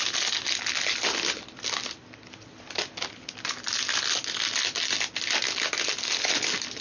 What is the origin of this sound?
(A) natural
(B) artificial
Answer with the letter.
A